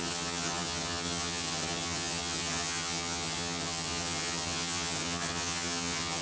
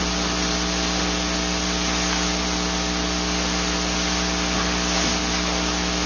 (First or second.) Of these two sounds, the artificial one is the first